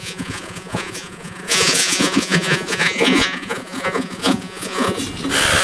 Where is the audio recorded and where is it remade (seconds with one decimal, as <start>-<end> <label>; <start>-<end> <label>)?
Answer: 0.0-5.0 remade; 5.0-5.6 recorded